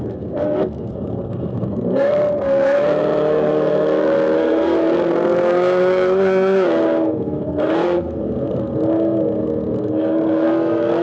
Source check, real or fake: fake